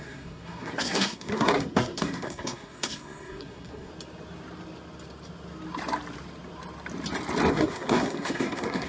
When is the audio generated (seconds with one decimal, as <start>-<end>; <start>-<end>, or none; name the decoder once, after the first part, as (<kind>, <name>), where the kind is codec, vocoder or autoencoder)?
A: 0.0-3.9 (codec, SNAC); 7.5-8.9